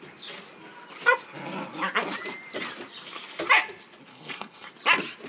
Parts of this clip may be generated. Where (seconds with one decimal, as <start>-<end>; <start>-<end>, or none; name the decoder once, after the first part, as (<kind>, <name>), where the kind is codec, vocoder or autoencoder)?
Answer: 4.1-4.7 (codec, SNAC)